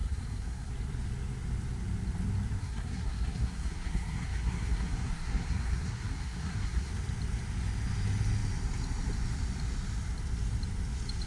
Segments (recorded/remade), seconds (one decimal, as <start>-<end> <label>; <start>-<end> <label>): 0.0-0.7 remade; 0.7-2.6 recorded; 2.6-6.9 remade; 6.9-11.3 recorded